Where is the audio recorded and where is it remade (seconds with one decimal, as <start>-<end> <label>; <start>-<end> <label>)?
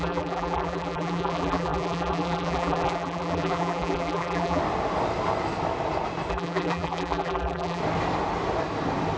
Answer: 0.0-4.6 remade; 4.6-6.3 recorded; 6.3-7.8 remade; 7.8-9.2 recorded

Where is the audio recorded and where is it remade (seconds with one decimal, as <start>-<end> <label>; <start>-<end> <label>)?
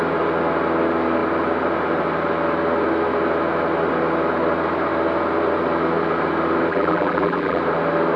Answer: 0.0-6.7 recorded; 6.7-7.6 remade; 7.6-8.2 recorded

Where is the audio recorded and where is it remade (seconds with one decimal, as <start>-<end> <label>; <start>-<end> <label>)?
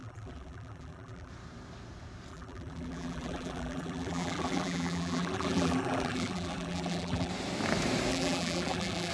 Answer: 0.0-1.3 remade; 1.3-2.3 recorded; 2.3-7.3 remade; 7.3-8.1 recorded; 8.1-9.1 remade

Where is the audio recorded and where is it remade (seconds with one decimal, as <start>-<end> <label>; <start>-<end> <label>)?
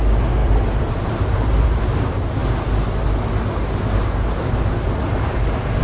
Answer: 0.0-0.4 recorded; 0.4-1.8 remade; 1.8-5.8 recorded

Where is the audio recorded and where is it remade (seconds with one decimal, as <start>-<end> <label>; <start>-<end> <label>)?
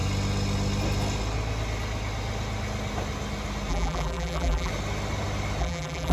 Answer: 0.0-3.7 recorded; 3.7-4.7 remade; 4.7-5.6 recorded; 5.6-6.1 remade